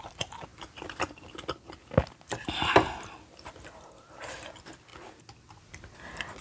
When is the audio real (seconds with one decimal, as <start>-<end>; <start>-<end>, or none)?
0.0-6.4

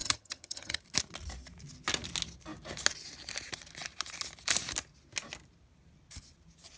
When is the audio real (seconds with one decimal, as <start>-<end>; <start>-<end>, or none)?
0.8-6.8